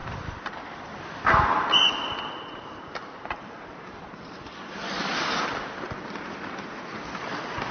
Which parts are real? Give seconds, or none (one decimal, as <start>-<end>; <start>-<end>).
0.0-7.7

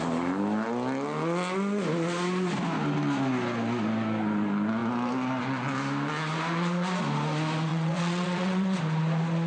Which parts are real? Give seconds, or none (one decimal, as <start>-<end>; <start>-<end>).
0.0-7.7; 8.8-9.5